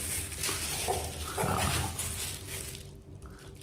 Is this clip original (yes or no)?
yes